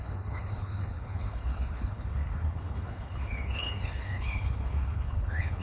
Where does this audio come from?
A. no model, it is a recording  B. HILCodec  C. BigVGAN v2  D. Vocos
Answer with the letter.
B